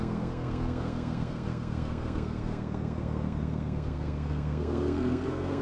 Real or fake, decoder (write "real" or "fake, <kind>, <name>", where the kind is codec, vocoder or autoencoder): fake, codec, SNAC